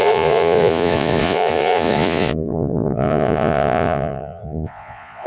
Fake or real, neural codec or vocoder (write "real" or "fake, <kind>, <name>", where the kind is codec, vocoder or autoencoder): fake, vocoder, Vocos